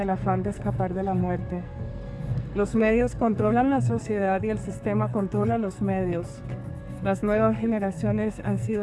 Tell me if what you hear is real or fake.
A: fake